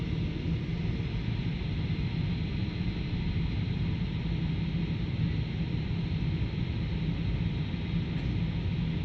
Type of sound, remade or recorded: recorded